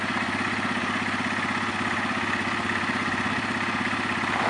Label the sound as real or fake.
real